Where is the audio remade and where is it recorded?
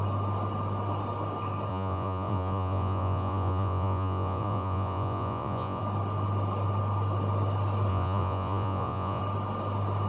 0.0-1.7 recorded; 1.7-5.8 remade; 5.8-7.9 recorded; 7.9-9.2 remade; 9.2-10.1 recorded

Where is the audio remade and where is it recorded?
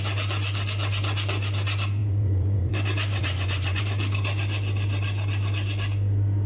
0.0-2.0 recorded; 2.0-2.7 remade; 2.7-3.2 recorded; 3.2-3.8 remade; 3.8-6.5 recorded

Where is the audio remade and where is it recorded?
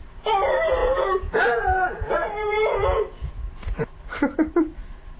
0.0-0.8 recorded; 0.8-3.3 remade; 3.3-5.2 recorded